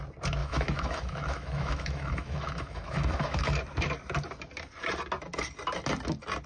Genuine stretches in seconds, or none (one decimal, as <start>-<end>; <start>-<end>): 0.0-0.4; 3.6-6.5